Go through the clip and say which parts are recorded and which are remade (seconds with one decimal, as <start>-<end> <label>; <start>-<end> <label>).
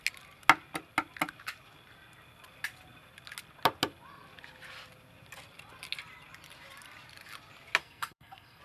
0.0-7.8 recorded; 7.8-8.6 remade